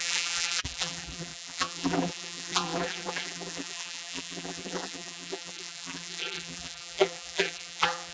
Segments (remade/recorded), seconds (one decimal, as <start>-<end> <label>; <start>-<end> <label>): 0.0-8.1 remade